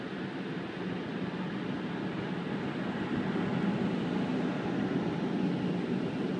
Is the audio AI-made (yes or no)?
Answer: no